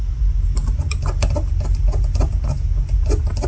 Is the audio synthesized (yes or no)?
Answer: no